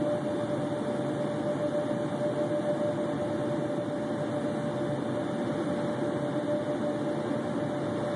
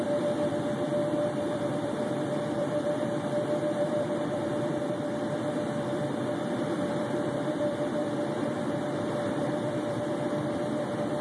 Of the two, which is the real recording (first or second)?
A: first